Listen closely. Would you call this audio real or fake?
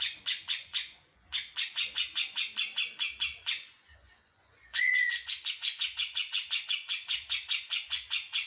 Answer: fake